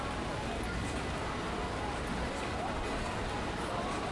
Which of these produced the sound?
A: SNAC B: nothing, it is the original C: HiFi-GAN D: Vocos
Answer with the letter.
B